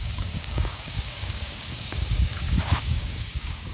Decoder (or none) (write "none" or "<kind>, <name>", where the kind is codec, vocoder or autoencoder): codec, DAC